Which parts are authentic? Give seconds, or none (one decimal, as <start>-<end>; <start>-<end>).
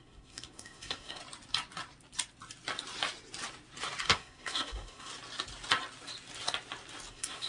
1.2-4.0; 5.1-7.1